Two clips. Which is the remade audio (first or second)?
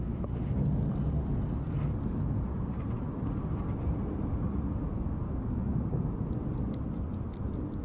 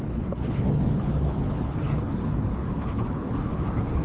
second